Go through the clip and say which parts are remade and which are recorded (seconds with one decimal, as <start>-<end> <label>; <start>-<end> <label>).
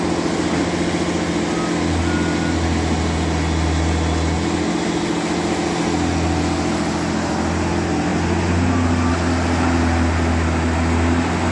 0.0-11.5 recorded